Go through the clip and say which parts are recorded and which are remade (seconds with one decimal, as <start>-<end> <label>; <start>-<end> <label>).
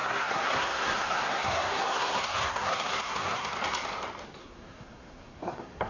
0.0-3.5 remade; 3.5-4.4 recorded; 4.4-5.9 remade